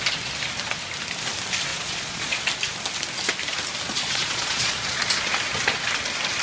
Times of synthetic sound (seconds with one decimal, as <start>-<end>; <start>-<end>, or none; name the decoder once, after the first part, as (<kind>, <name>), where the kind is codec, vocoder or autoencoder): 1.7-2.4 (vocoder, Vocos); 3.9-5.0